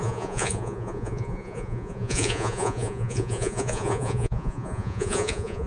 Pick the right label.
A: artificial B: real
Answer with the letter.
A